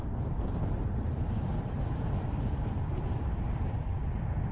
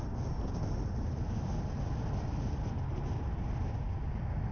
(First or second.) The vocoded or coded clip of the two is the first